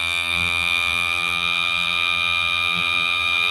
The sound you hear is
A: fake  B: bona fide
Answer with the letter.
A